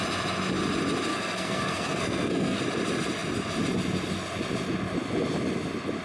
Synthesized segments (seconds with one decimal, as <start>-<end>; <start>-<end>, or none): 1.1-2.6